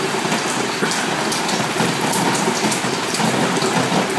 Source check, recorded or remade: recorded